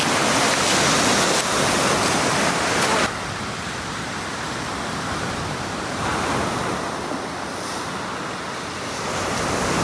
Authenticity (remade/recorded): recorded